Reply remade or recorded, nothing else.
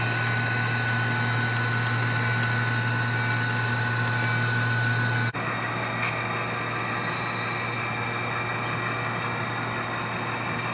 recorded